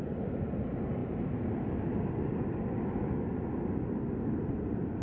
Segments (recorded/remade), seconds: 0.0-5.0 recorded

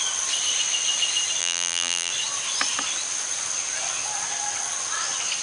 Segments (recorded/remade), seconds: 0.0-1.4 recorded; 1.4-2.1 remade; 2.1-5.4 recorded

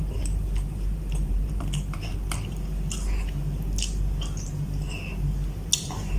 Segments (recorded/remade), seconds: 0.0-2.1 remade; 2.1-5.8 recorded; 5.8-6.2 remade